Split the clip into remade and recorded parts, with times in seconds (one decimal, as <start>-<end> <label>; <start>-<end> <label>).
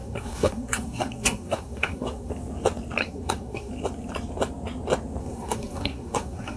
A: 0.0-2.3 remade; 2.3-3.0 recorded; 3.0-3.7 remade; 3.7-5.2 recorded; 5.2-6.6 remade